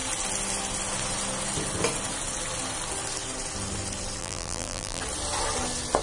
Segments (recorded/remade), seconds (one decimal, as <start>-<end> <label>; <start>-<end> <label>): 0.0-4.2 recorded; 4.2-5.0 remade; 5.0-6.0 recorded